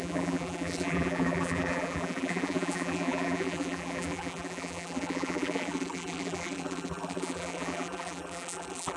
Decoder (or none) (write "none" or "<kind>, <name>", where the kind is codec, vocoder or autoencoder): vocoder, BigVGAN v2